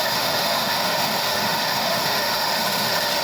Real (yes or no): no